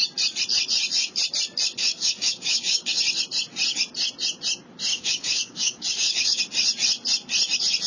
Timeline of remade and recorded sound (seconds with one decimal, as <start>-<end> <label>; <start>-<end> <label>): 0.0-1.8 recorded; 1.8-2.9 remade; 2.9-4.9 recorded; 4.9-6.4 remade; 6.4-7.9 recorded